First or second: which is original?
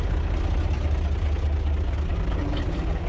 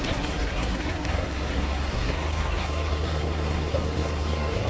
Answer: first